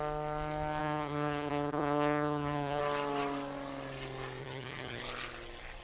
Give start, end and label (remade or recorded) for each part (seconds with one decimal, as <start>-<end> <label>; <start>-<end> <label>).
0.0-0.8 recorded; 0.8-2.8 remade; 2.8-4.4 recorded; 4.4-5.0 remade; 5.0-5.8 recorded